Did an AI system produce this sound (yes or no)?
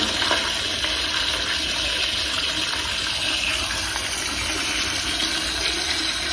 no